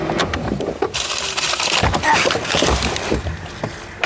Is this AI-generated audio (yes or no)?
no